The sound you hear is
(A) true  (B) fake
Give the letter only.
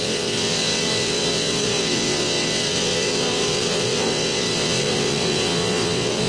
B